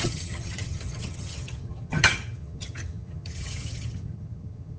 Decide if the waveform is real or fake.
fake